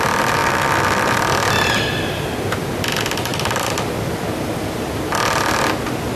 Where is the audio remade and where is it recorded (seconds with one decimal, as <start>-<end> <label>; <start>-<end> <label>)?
0.0-6.2 recorded